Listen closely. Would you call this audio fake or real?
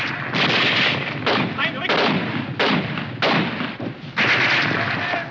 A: real